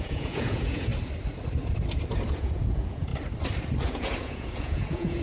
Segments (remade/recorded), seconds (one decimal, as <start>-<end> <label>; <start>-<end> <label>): 0.0-0.9 remade; 0.9-2.3 recorded; 2.3-3.1 remade; 3.1-3.8 recorded; 3.8-5.2 remade